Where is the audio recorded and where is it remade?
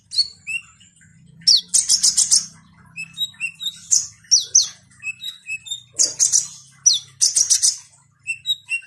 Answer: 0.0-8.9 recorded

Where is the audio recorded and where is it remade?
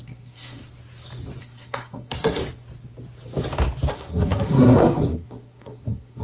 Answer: 0.0-0.6 remade; 0.6-1.4 recorded; 1.4-2.4 remade; 2.4-3.9 recorded; 3.9-6.2 remade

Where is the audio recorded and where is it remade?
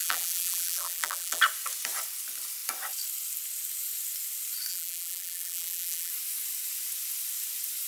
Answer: 0.0-1.4 remade; 1.4-4.7 recorded; 4.7-6.1 remade; 6.1-7.9 recorded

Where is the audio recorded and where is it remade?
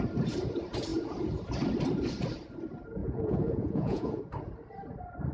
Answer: 0.0-3.0 recorded; 3.0-4.2 remade; 4.2-5.3 recorded